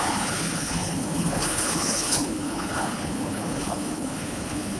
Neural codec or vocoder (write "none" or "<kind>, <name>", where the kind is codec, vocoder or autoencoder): codec, HILCodec